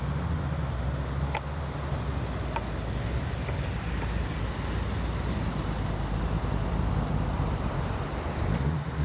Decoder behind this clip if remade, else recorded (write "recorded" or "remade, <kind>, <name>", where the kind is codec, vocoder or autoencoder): recorded